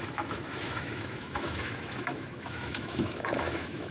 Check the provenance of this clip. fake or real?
fake